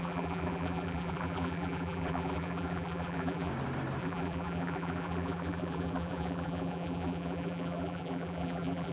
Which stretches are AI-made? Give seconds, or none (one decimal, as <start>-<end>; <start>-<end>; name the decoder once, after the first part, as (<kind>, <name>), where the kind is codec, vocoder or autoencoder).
0.0-3.5 (vocoder, BigVGAN v2); 4.0-8.9